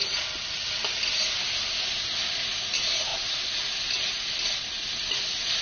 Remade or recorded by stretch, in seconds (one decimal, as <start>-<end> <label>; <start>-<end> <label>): 0.0-5.6 recorded

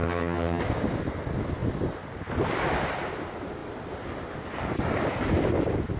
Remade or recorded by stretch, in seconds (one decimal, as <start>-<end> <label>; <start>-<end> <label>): 0.0-0.6 remade; 0.6-6.0 recorded

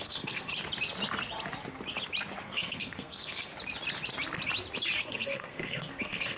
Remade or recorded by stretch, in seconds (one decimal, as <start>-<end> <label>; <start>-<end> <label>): 0.0-0.5 remade; 0.5-2.4 recorded; 2.4-3.5 remade; 3.5-5.0 recorded; 5.0-6.4 remade

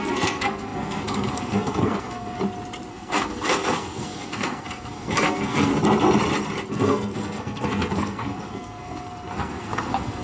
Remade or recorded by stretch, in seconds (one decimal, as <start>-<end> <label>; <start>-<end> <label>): 0.0-2.4 remade; 2.4-2.9 recorded; 2.9-5.7 remade; 5.7-6.7 recorded; 6.7-10.2 remade

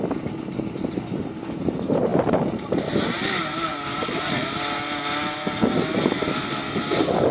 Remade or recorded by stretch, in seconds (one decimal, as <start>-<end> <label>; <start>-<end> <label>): 0.0-7.3 recorded